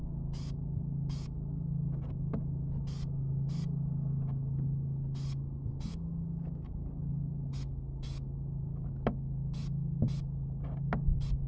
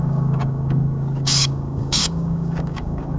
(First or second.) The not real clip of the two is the second